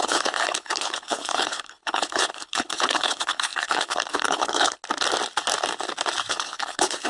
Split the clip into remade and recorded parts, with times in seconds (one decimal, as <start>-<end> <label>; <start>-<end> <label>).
0.0-4.8 remade; 4.8-6.3 recorded; 6.3-7.1 remade